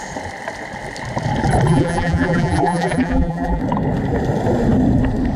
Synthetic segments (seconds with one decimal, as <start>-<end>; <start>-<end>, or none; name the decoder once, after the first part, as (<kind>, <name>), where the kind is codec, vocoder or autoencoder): 1.7-3.6 (vocoder, BigVGAN v2)